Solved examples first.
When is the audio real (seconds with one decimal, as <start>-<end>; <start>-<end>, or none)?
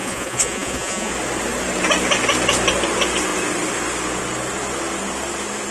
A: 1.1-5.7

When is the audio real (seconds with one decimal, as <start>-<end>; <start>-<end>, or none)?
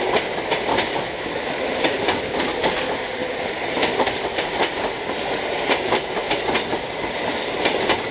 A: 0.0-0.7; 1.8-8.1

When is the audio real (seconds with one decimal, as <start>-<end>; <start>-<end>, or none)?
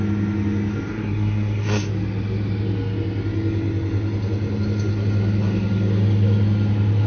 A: 0.0-0.9; 1.9-7.1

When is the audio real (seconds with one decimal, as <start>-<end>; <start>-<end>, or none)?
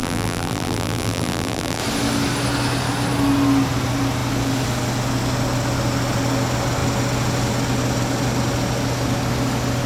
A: 1.8-9.9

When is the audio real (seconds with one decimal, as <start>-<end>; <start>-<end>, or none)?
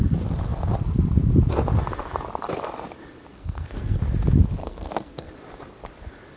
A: 0.0-3.3; 4.0-4.6; 5.3-6.4